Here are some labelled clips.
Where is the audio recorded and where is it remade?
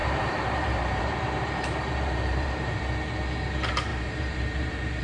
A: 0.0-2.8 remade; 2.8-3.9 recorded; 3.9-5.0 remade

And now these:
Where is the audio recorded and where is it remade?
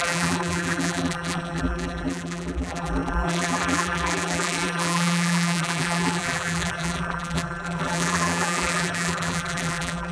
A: 0.0-10.1 remade